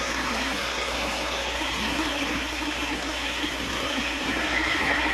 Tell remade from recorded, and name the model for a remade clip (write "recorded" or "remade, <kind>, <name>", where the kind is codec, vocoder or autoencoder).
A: remade, codec, SNAC